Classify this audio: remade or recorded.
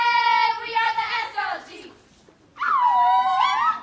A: recorded